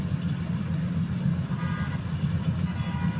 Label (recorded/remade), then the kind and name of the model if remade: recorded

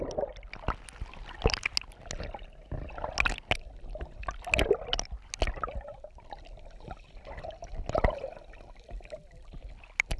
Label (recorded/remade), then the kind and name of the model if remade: recorded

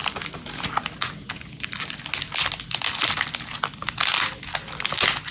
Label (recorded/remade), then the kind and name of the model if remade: recorded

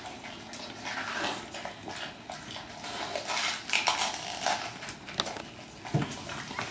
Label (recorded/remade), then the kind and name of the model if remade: recorded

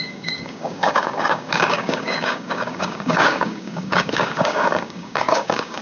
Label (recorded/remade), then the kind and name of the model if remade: remade, codec, DAC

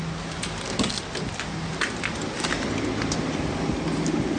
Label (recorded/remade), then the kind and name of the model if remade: recorded